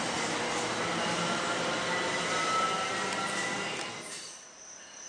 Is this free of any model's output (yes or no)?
yes